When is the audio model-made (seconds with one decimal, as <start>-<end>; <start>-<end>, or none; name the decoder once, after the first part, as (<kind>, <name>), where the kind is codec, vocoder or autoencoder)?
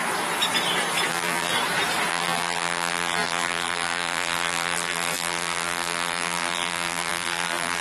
1.1-1.5 (vocoder, BigVGAN v2); 2.1-7.8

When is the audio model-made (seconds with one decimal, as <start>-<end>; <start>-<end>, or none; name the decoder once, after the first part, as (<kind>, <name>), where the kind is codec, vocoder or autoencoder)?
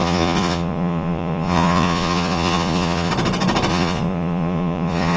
0.0-3.1 (vocoder, Vocos); 3.7-5.2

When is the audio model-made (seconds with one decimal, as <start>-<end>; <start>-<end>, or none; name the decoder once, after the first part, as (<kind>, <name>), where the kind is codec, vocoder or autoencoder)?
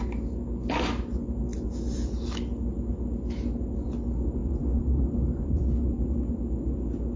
none